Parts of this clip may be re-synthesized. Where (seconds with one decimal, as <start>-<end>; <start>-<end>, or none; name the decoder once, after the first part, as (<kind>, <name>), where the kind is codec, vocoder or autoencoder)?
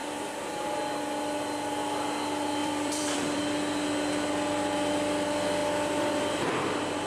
0.0-0.7 (vocoder, BigVGAN v2); 2.6-3.4